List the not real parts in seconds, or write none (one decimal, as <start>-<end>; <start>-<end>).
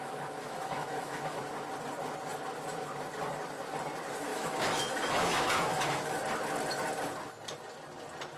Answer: 0.0-1.4; 4.3-6.2